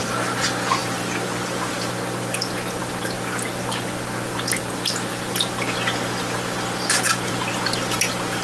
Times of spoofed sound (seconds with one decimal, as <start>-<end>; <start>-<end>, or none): none